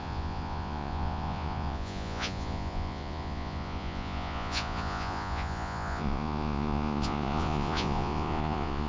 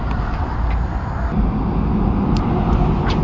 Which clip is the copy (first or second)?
first